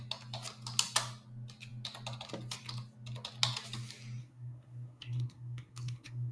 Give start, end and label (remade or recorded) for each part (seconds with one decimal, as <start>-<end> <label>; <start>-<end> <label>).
0.0-4.2 recorded; 4.2-6.3 remade